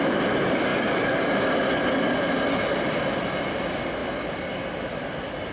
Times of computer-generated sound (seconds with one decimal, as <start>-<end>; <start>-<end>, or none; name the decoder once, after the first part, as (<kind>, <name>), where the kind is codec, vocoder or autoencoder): none